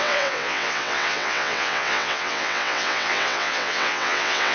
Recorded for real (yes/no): no